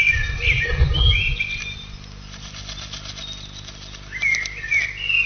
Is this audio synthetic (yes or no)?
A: no